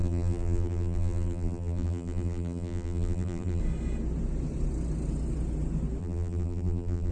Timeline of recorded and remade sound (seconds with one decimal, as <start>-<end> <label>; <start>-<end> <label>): 0.0-3.6 remade; 3.6-6.0 recorded; 6.0-7.1 remade

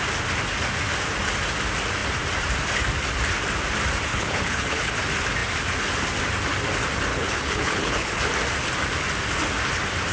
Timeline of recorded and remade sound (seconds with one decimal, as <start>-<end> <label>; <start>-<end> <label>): 0.0-4.1 recorded; 4.1-4.9 remade; 4.9-7.1 recorded; 7.1-8.2 remade; 8.2-10.1 recorded